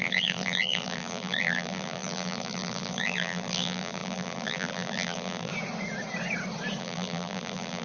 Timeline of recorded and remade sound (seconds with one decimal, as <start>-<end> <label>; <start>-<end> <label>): 0.0-5.5 remade; 5.5-6.8 recorded; 6.8-7.8 remade